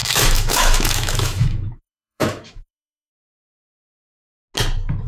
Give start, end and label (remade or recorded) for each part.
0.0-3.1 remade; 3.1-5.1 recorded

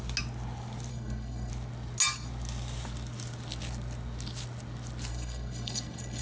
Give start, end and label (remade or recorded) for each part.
0.0-0.9 recorded; 0.9-1.5 remade; 1.5-5.1 recorded; 5.1-6.2 remade